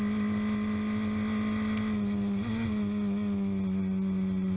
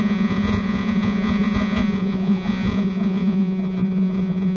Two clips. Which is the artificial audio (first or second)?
second